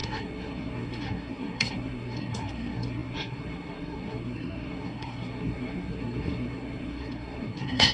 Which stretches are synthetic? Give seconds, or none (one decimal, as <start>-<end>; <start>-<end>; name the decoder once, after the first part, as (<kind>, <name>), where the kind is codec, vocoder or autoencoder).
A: 0.0-7.9 (codec, SNAC)